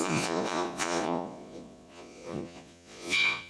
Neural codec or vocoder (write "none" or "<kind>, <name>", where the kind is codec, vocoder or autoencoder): vocoder, Vocos